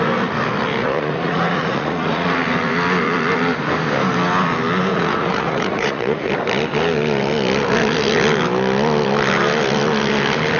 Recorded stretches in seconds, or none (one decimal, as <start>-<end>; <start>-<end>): 0.0-0.8; 2.3-4.9; 6.3-10.6